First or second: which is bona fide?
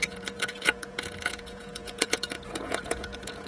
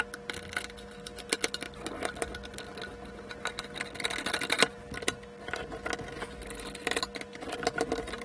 second